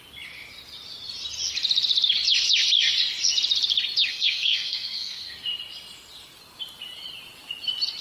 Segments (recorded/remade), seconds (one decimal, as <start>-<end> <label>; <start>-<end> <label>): 0.0-4.1 recorded; 4.1-5.3 remade; 5.3-8.0 recorded